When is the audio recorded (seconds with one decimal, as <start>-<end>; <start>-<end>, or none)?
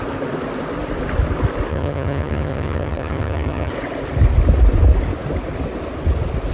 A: 0.0-1.7; 3.7-6.5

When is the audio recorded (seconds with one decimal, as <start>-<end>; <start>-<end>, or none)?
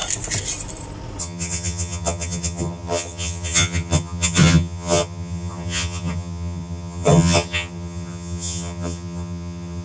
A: 0.0-1.2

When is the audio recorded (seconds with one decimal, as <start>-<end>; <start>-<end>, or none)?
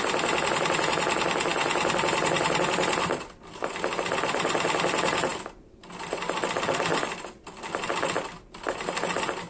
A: 0.0-9.5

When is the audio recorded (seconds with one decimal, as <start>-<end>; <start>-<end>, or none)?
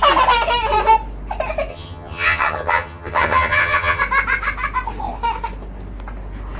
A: 0.0-1.7; 4.0-6.6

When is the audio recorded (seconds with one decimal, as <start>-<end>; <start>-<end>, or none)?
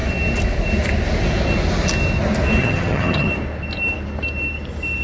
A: 0.0-2.6; 3.3-5.0